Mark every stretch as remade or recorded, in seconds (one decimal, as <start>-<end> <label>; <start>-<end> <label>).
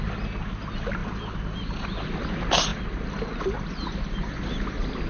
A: 0.0-5.1 recorded